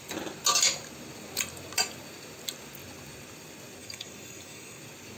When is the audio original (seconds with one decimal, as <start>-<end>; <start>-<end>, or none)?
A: 0.0-3.8; 4.8-5.2